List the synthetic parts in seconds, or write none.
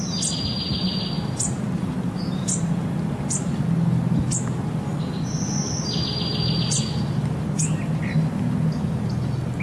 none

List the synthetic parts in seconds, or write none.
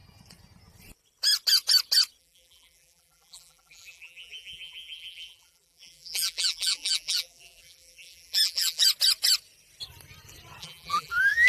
2.2-8.8 (vocoder, BigVGAN v2); 10.6-11.5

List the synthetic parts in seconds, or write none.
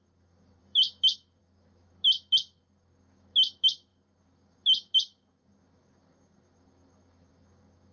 0.0-7.9 (autoencoder, DAC-VAE)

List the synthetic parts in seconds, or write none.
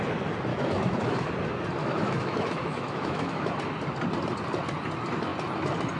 0.5-1.3 (autoencoder, DAC-VAE); 1.8-3.5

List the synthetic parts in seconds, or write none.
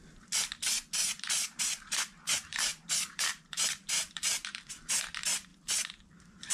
1.0-4.9 (vocoder, BigVGAN v2); 5.5-6.1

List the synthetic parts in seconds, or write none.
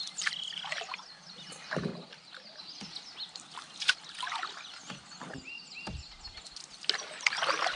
none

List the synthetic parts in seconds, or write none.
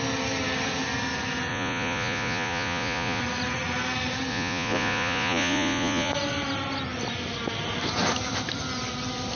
1.5-3.2 (vocoder, Vocos); 4.3-6.1